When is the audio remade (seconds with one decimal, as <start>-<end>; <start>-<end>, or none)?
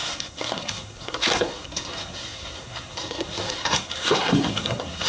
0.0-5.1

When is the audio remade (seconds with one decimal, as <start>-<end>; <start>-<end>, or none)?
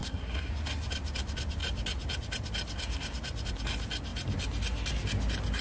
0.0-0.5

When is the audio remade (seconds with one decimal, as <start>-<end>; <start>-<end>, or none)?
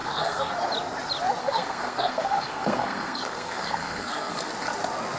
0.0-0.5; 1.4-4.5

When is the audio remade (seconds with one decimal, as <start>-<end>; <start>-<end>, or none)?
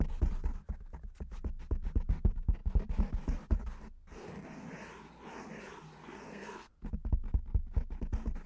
6.0-6.7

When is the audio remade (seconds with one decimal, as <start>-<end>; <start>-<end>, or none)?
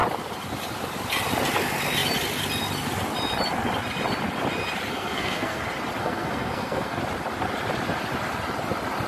4.9-5.6; 6.0-7.0